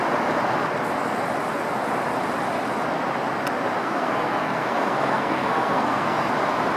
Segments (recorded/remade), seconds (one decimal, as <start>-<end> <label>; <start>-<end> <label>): 0.0-3.8 recorded; 3.8-6.3 remade; 6.3-6.8 recorded